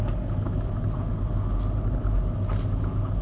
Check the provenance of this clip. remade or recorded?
recorded